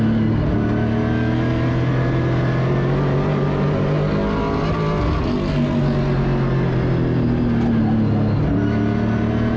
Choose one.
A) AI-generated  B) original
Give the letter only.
B